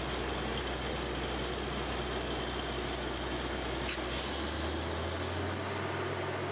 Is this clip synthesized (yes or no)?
no